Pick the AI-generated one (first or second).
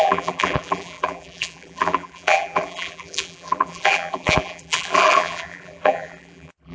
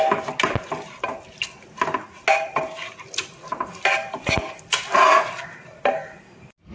first